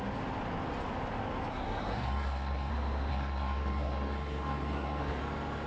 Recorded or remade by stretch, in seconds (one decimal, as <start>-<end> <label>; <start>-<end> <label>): 0.0-1.5 recorded; 1.5-2.7 remade; 2.7-3.1 recorded; 3.1-5.2 remade; 5.2-5.7 recorded